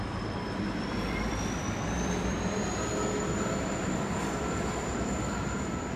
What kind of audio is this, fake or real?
fake